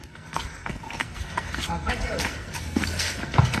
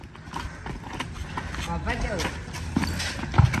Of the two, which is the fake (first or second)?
first